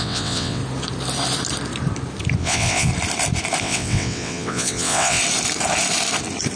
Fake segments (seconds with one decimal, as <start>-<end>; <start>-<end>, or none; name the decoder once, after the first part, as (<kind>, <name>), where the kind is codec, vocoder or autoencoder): 0.0-0.6 (vocoder, WaveNeXt); 2.4-2.9; 3.6-5.2